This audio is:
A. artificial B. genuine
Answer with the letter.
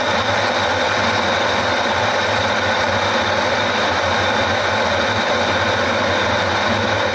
B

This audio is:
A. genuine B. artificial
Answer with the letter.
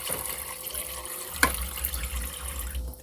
A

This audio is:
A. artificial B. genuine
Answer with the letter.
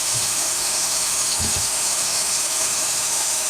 A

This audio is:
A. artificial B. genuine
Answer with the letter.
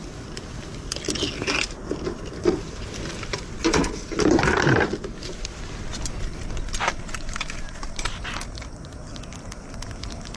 B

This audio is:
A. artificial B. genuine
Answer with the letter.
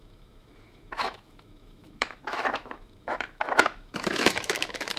A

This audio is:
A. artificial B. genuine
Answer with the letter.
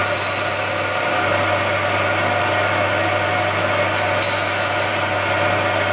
B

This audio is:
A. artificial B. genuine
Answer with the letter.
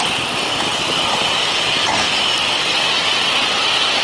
B